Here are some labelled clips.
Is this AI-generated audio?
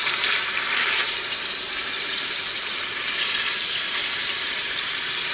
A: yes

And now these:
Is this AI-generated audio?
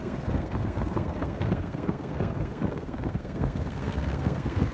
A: yes